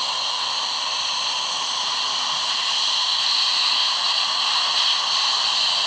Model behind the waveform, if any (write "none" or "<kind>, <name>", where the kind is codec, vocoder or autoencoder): none